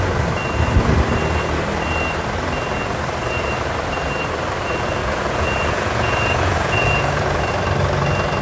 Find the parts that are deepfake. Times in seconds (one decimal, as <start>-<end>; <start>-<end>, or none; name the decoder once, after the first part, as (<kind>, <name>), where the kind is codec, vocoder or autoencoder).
5.0-7.5 (vocoder, Vocos)

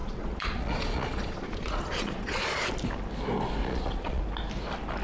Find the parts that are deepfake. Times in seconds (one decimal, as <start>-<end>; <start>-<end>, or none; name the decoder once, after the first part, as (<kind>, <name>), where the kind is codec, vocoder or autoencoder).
0.0-2.6 (vocoder, Vocos); 3.6-4.2